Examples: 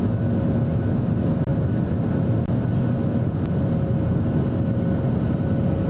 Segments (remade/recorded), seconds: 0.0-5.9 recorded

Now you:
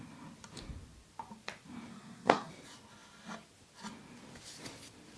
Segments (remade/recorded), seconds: 0.0-1.9 recorded; 1.9-2.5 remade; 2.5-5.2 recorded

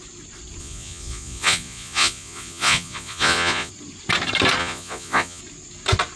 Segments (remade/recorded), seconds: 0.0-0.6 recorded; 0.6-3.7 remade; 3.7-4.6 recorded; 4.6-5.4 remade; 5.4-6.2 recorded

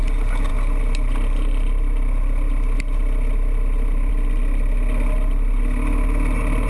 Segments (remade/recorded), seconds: 0.0-6.7 recorded

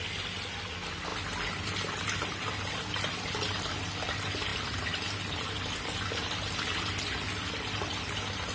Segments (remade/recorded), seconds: 0.0-8.5 recorded

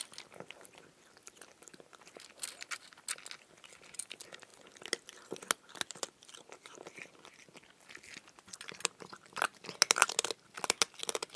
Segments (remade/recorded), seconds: 0.0-11.4 recorded

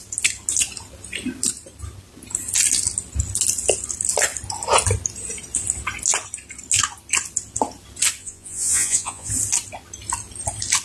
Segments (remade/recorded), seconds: 0.0-8.2 recorded; 8.2-9.3 remade; 9.3-10.8 recorded

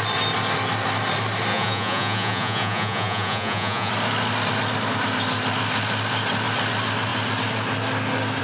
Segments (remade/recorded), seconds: 0.0-1.5 recorded; 1.5-3.9 remade; 3.9-8.4 recorded